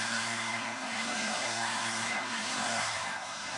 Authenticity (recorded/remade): remade